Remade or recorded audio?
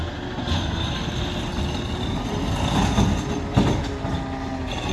recorded